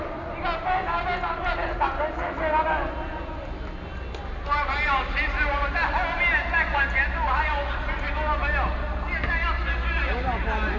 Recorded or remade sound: recorded